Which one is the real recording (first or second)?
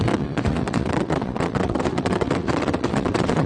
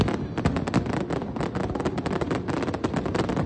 second